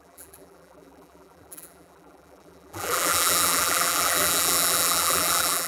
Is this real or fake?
fake